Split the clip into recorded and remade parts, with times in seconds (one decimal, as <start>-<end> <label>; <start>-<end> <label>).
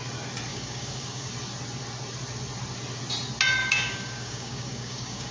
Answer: 0.0-0.5 recorded; 0.5-1.3 remade; 1.3-3.6 recorded; 3.6-5.3 remade